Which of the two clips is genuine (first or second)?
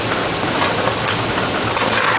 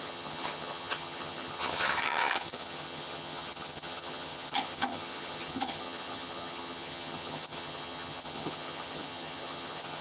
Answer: first